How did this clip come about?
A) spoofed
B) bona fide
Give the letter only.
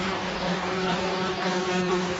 A